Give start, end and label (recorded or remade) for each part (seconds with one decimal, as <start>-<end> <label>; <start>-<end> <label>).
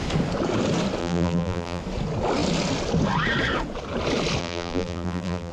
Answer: 0.0-1.0 recorded; 1.0-1.8 remade; 1.8-4.4 recorded; 4.4-5.5 remade